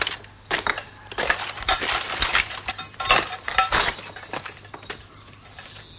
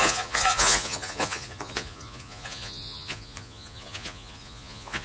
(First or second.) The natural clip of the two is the first